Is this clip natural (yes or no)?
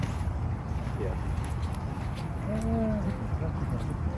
yes